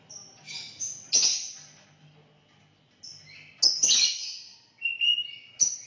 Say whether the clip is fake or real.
real